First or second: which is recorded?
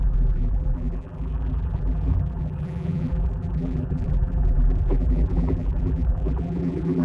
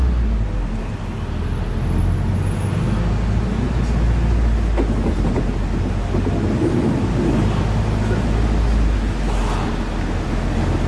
second